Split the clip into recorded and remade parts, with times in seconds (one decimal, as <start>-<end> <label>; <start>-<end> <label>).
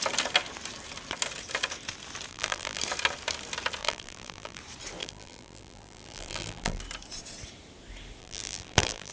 0.0-2.3 recorded; 2.3-2.8 remade; 2.8-3.8 recorded; 3.8-4.6 remade; 4.6-5.0 recorded; 5.0-6.8 remade; 6.8-8.2 recorded; 8.2-9.1 remade